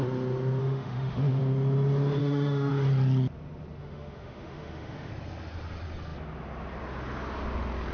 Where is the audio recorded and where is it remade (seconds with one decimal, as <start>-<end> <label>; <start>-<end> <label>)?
0.0-0.6 recorded; 0.6-1.4 remade; 1.4-2.2 recorded; 2.2-2.7 remade; 2.7-3.8 recorded; 3.8-5.1 remade; 5.1-7.9 recorded